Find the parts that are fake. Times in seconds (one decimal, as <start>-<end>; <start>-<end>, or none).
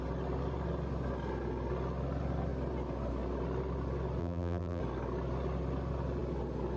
4.2-4.8